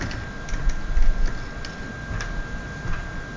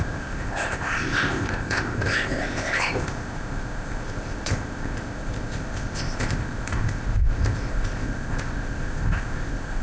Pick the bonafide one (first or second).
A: first